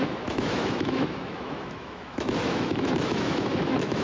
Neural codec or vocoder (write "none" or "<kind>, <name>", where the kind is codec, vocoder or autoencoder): autoencoder, DAC-VAE